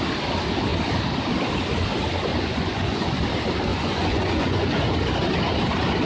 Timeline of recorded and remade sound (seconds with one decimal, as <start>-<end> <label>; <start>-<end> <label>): 0.0-2.3 recorded; 2.3-3.2 remade; 3.2-3.7 recorded; 3.7-4.8 remade; 4.8-6.1 recorded